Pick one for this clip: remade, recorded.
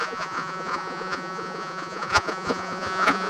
remade